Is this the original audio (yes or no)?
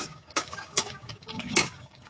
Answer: no